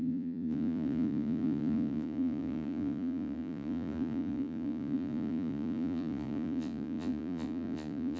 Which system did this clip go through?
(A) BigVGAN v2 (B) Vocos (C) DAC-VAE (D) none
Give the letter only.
B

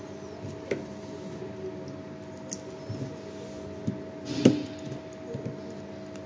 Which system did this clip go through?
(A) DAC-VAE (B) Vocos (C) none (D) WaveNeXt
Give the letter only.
C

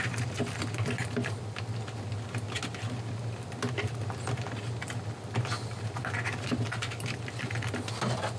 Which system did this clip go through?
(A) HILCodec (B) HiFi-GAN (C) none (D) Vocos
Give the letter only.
C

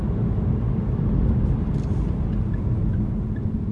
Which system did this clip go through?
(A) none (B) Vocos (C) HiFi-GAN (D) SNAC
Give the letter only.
A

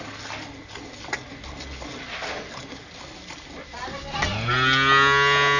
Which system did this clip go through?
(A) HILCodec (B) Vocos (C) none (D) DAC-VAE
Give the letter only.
C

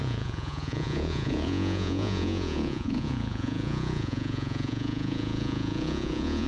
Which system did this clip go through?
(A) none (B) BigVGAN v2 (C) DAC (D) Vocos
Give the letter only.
D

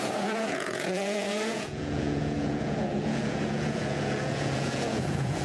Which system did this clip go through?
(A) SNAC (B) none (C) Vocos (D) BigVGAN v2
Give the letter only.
C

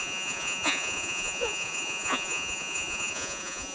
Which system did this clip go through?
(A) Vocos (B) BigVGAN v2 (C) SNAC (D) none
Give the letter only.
A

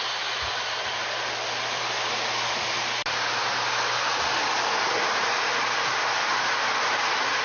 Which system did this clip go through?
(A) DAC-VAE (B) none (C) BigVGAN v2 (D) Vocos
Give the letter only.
B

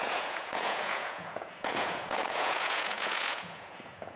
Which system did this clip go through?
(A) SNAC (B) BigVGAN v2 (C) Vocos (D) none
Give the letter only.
C